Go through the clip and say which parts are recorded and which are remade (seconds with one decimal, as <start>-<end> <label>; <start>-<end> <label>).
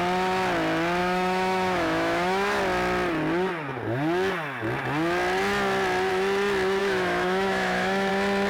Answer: 0.0-1.0 recorded; 1.0-2.6 remade; 2.6-6.8 recorded; 6.8-8.1 remade; 8.1-8.5 recorded